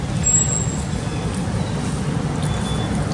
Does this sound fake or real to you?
real